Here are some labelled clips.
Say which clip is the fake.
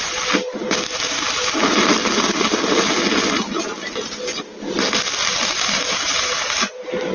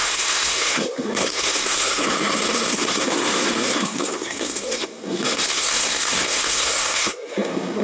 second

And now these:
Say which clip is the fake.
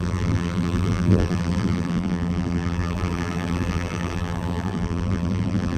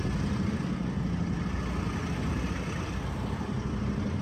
first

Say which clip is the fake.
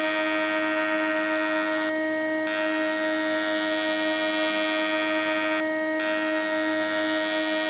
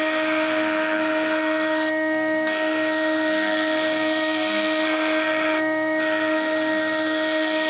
second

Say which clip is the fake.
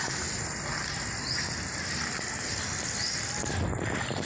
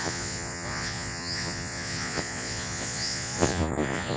second